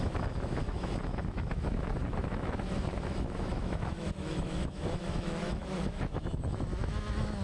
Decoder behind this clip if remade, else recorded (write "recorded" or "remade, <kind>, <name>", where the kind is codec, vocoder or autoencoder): remade, autoencoder, DAC-VAE